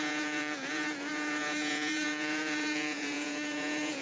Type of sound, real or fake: fake